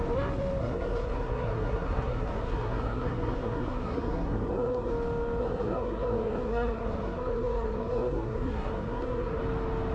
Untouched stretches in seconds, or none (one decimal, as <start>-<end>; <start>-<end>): 0.0-0.6; 4.9-5.4; 9.4-9.9